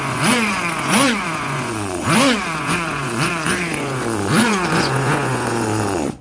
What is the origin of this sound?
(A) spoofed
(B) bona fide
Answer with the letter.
A